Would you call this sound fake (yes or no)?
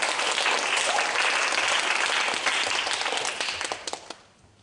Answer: no